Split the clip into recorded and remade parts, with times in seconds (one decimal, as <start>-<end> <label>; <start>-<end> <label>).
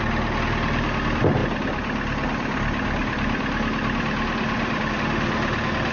0.0-5.9 remade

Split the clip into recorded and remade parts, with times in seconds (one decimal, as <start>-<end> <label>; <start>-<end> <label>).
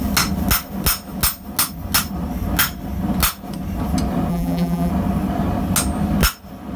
0.0-4.3 recorded; 4.3-4.9 remade; 4.9-6.8 recorded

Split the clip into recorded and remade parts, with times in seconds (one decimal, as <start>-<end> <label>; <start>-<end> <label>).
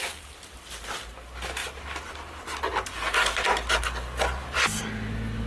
0.0-5.5 recorded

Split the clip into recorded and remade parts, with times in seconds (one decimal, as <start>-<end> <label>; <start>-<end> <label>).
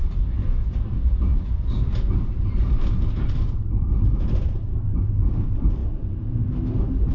0.0-7.1 remade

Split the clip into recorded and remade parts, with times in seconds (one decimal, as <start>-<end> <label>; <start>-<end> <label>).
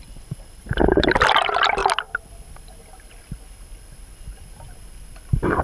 0.0-1.8 remade; 1.8-5.6 recorded